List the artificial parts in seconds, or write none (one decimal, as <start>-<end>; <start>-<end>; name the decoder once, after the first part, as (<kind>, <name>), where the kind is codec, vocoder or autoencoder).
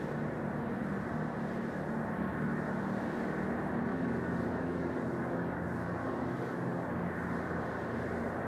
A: 3.9-7.1 (codec, DAC)